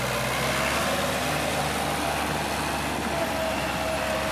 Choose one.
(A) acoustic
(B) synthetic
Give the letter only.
A